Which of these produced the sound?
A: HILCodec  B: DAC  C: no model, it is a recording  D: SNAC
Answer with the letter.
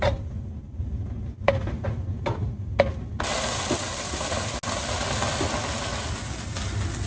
C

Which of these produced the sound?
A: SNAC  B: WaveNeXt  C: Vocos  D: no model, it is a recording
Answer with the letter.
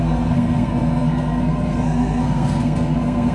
A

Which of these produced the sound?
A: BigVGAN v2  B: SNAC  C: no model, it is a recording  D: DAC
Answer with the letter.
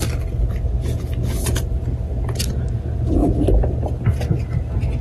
C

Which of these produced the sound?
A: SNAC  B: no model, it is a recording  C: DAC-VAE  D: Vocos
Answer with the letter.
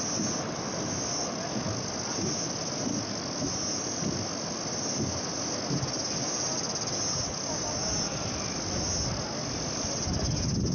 B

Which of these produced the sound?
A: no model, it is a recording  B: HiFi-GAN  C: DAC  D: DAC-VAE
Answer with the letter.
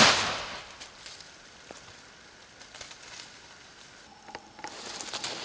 A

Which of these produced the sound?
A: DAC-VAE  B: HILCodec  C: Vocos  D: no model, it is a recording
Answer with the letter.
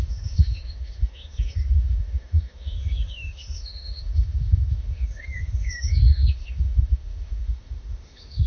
A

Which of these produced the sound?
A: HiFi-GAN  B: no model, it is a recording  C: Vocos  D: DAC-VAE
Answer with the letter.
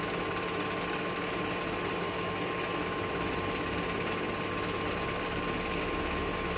B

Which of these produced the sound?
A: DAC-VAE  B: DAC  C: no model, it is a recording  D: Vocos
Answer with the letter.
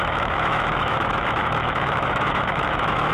A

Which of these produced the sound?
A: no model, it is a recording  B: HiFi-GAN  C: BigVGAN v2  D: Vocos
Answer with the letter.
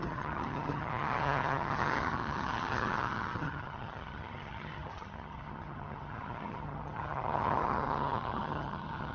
B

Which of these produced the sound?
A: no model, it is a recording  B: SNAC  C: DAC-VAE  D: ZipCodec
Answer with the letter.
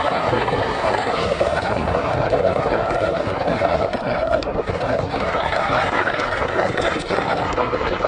B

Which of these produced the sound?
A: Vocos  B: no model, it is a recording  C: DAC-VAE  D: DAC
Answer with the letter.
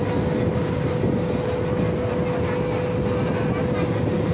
B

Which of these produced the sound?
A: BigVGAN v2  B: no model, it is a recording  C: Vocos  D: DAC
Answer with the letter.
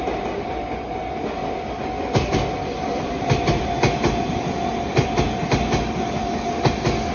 B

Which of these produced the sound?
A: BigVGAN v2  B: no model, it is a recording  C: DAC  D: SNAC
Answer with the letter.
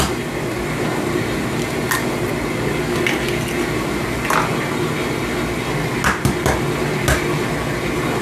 B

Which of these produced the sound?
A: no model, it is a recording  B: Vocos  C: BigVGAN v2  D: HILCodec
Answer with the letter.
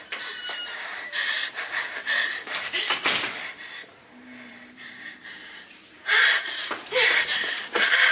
C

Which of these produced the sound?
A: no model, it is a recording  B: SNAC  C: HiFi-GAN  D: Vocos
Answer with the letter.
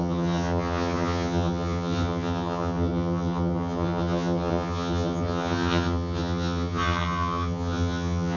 C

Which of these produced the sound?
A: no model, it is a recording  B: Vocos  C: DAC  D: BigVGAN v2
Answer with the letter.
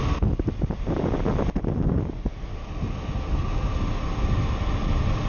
A